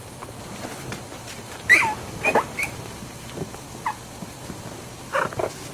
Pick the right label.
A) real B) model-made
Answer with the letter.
B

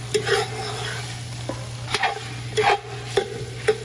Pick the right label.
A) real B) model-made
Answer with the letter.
A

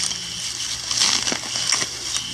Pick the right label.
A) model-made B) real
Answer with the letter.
B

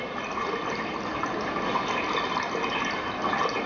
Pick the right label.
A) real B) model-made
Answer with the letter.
A